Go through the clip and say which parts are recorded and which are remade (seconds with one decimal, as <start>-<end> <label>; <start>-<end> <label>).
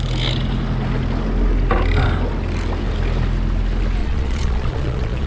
0.0-4.0 recorded; 4.0-5.3 remade